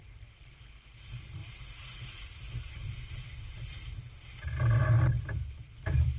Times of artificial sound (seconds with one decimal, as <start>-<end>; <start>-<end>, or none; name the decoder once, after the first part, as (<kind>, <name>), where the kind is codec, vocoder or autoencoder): 0.0-6.2 (vocoder, BigVGAN v2)